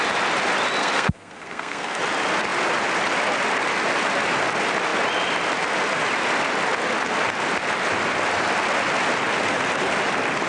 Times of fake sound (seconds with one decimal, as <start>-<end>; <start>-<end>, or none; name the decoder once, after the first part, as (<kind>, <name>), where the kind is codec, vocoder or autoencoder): 0.8-2.0 (codec, SNAC)